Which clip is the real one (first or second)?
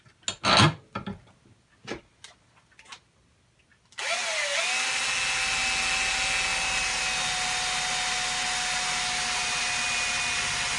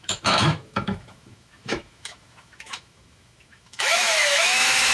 first